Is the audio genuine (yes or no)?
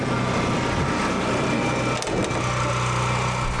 yes